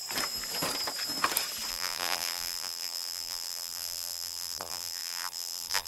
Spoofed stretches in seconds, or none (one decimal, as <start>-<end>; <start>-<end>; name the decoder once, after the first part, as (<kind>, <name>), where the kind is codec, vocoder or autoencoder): 1.7-5.9 (vocoder, BigVGAN v2)